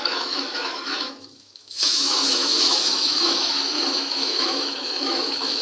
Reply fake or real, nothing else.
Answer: fake